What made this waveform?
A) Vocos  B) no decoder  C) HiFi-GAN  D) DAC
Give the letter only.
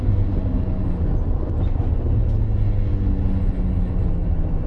B